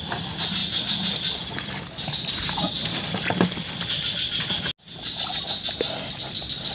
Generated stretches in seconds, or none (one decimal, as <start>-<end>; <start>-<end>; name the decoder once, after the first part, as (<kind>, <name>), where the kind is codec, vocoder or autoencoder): none